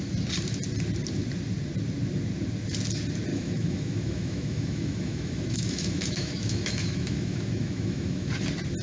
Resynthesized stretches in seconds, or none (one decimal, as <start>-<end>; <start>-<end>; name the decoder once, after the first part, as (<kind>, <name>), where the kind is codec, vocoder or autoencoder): 3.3-8.3 (autoencoder, DAC-VAE)